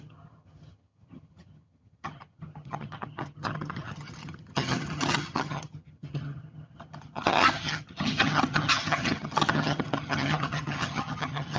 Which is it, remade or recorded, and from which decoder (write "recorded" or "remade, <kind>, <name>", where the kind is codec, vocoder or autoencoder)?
remade, vocoder, HiFi-GAN